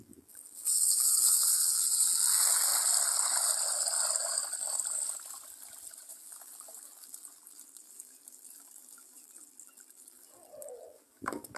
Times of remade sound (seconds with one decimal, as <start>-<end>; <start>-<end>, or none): 0.0-2.7; 6.1-11.6